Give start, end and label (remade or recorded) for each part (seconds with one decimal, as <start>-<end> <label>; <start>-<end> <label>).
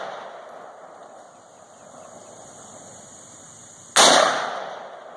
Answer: 0.0-5.2 recorded